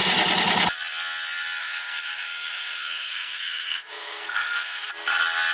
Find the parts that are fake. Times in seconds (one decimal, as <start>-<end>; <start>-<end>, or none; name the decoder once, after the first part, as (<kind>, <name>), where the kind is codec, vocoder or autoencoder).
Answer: 1.6-4.9 (codec, SNAC)